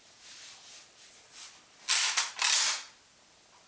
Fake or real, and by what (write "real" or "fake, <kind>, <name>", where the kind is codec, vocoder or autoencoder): real